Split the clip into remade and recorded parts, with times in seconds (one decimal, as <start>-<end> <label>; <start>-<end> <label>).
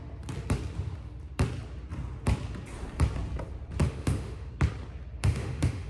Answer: 0.0-3.8 recorded; 3.8-4.5 remade; 4.5-5.2 recorded; 5.2-5.9 remade